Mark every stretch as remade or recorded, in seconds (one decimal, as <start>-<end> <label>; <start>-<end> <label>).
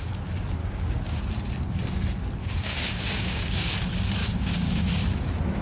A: 0.0-0.6 recorded; 0.6-1.2 remade; 1.2-2.4 recorded; 2.4-3.7 remade; 3.7-4.2 recorded; 4.2-4.9 remade; 4.9-5.6 recorded